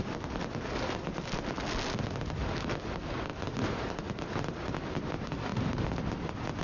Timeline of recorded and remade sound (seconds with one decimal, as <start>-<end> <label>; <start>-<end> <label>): 0.0-6.6 recorded

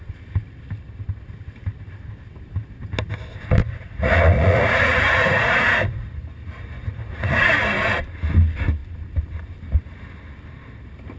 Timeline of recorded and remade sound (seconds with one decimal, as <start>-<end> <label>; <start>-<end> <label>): 0.0-3.6 recorded; 3.6-7.5 remade; 7.5-11.2 recorded

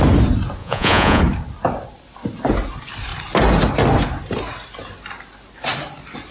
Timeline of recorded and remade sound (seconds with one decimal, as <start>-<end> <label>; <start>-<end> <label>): 0.0-0.6 recorded; 0.6-1.2 remade; 1.2-6.3 recorded

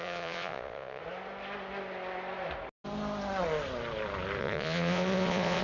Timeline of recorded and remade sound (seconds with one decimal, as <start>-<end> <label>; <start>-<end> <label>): 0.0-1.0 remade; 1.0-4.4 recorded; 4.4-5.6 remade

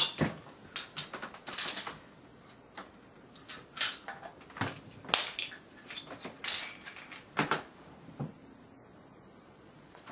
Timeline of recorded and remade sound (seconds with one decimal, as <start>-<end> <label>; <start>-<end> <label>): 0.0-9.4 recorded; 9.4-10.1 remade

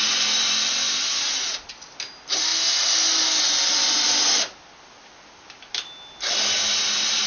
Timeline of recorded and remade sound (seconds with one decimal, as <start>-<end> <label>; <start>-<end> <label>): 0.0-7.3 recorded

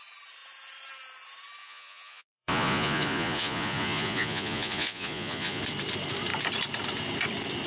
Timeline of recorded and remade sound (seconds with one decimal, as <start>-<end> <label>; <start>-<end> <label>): 0.0-1.6 recorded; 1.6-5.6 remade; 5.6-7.7 recorded

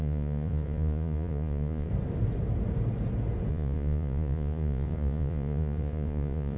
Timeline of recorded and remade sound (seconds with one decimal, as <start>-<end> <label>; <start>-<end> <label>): 0.0-1.9 remade; 1.9-3.5 recorded; 3.5-6.6 remade